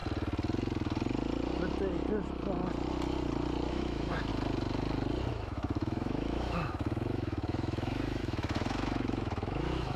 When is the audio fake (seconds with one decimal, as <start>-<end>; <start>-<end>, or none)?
3.7-4.3; 5.3-10.0